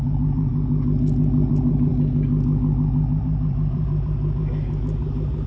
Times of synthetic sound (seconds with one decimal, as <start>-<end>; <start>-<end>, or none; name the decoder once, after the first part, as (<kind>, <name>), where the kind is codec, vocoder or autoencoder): 0.0-0.5 (vocoder, BigVGAN v2); 1.5-1.9; 3.2-5.5